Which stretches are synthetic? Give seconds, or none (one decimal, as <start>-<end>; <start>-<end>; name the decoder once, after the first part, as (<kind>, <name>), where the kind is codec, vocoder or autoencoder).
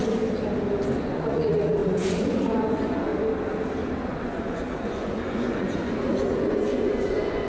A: 1.0-3.1 (vocoder, Vocos); 4.1-7.5